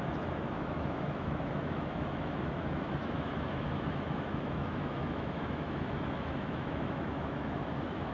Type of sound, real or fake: fake